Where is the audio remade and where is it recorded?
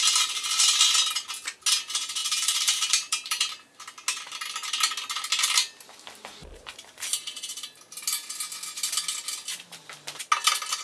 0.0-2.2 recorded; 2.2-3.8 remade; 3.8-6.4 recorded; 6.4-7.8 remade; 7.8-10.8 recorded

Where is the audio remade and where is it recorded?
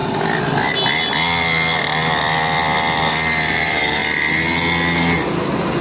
0.0-3.5 recorded; 3.5-4.0 remade; 4.0-5.8 recorded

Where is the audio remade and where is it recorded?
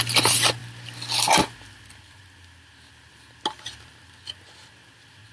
0.0-5.3 recorded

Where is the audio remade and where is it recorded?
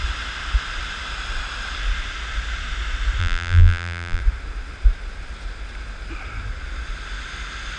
0.0-3.2 recorded; 3.2-4.2 remade; 4.2-7.8 recorded